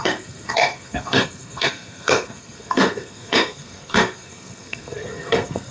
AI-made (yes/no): yes